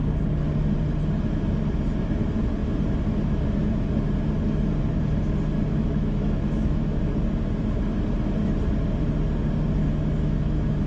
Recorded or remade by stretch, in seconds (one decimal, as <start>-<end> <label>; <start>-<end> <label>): 0.0-5.7 recorded; 5.7-7.0 remade; 7.0-9.8 recorded; 9.8-10.9 remade